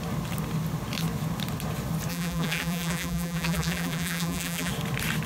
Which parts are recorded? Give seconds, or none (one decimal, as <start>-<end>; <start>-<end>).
0.0-2.1; 4.7-5.3